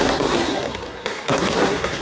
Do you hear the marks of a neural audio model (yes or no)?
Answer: yes